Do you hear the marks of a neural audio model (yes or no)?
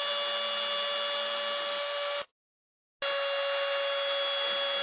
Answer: no